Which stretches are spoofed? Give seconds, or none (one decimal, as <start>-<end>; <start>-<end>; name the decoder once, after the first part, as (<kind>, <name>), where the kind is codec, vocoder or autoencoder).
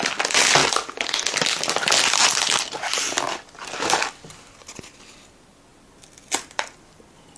none